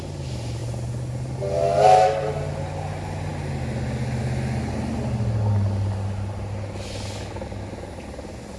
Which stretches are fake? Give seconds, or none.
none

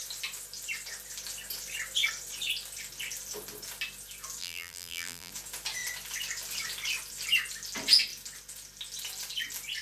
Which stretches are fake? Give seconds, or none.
4.4-5.3 (vocoder, BigVGAN v2)

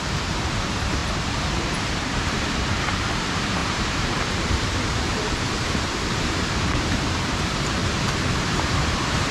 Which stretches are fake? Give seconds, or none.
0.0-7.8 (vocoder, BigVGAN v2); 8.6-9.3

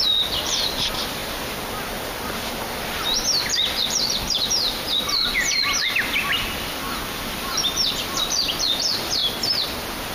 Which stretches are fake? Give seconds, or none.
0.0-1.2 (vocoder, BigVGAN v2); 2.0-9.2

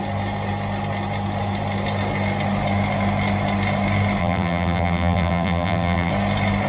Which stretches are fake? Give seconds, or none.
4.2-6.1 (vocoder, BigVGAN v2)

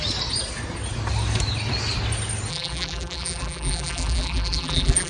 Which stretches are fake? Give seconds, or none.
2.5-5.1 (vocoder, BigVGAN v2)